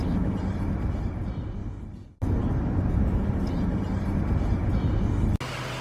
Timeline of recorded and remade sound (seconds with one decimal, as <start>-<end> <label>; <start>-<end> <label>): 0.0-5.8 recorded